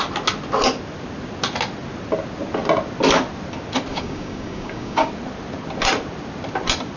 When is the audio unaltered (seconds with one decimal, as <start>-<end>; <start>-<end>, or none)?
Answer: 0.0-3.9; 5.1-7.0